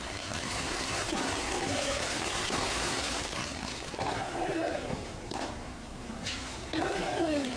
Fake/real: fake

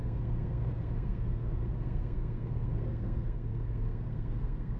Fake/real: fake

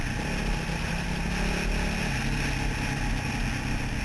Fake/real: real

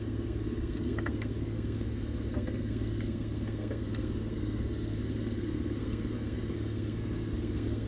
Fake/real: fake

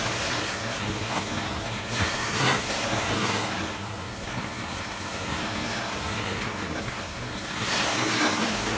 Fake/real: fake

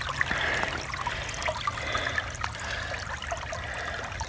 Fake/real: real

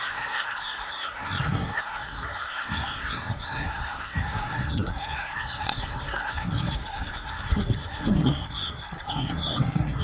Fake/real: fake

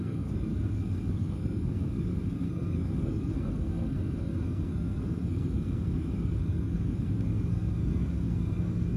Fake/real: fake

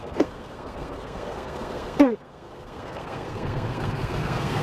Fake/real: fake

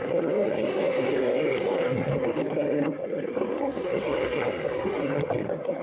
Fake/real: fake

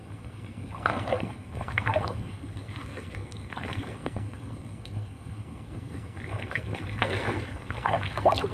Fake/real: fake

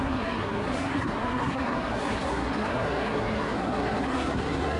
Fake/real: fake